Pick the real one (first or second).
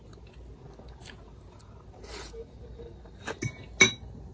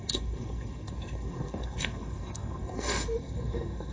first